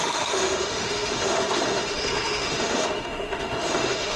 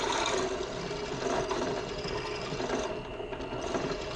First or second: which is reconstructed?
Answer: first